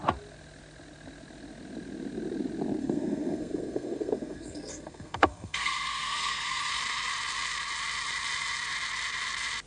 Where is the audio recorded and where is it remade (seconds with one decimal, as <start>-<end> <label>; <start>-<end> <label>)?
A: 0.0-2.8 recorded; 2.8-6.7 remade; 6.7-9.7 recorded